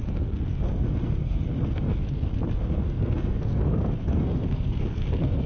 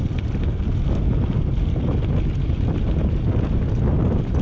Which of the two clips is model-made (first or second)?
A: first